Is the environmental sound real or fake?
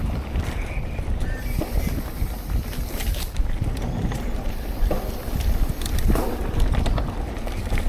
fake